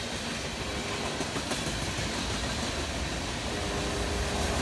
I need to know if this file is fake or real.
real